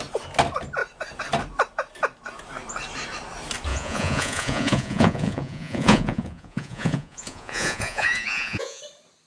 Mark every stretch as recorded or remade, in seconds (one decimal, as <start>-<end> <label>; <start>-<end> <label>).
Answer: 0.0-3.7 recorded; 3.7-8.8 remade; 8.8-9.3 recorded